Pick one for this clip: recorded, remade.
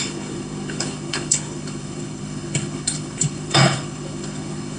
remade